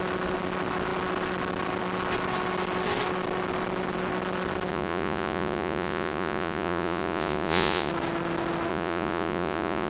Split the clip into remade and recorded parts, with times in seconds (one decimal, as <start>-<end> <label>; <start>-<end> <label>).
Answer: 0.0-4.7 recorded; 4.7-7.9 remade; 7.9-8.7 recorded; 8.7-9.9 remade